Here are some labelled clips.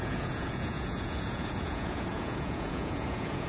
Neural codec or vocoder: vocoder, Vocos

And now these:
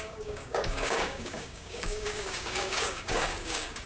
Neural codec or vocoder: codec, DAC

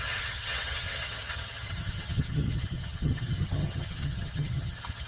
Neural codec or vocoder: vocoder, HiFi-GAN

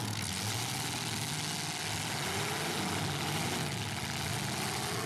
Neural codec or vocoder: none